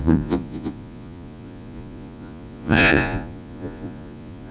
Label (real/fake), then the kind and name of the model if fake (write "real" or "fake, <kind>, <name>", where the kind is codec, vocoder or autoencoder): fake, vocoder, Vocos